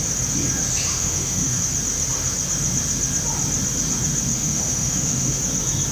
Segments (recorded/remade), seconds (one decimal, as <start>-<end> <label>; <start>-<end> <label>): 0.0-0.9 recorded; 0.9-1.6 remade; 1.6-4.3 recorded; 4.3-5.4 remade; 5.4-5.9 recorded